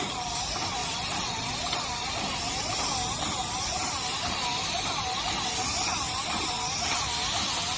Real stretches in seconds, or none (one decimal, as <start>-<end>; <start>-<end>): 0.0-0.8; 1.5-7.8